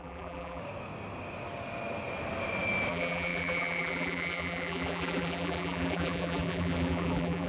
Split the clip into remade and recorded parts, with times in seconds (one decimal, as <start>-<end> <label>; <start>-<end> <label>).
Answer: 0.0-0.6 remade; 0.6-2.9 recorded; 2.9-7.5 remade